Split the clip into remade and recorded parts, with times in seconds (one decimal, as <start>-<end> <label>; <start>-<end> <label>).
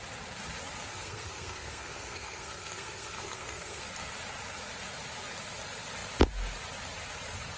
0.0-0.9 recorded; 0.9-3.8 remade; 3.8-7.6 recorded